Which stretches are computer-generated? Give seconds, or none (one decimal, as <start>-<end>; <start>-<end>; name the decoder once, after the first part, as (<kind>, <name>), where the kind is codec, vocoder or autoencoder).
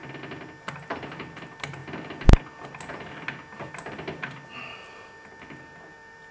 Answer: 0.7-1.8 (vocoder, BigVGAN v2); 5.6-6.3